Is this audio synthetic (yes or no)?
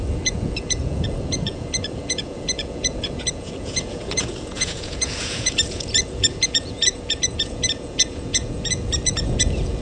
yes